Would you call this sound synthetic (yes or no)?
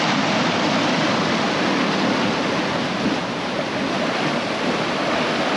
no